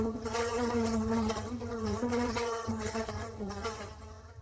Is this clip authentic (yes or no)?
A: no